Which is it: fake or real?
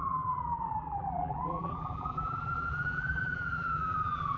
fake